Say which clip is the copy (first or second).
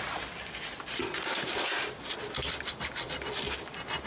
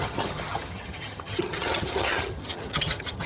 second